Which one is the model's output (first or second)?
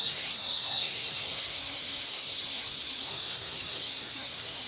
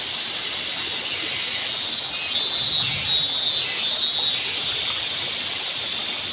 first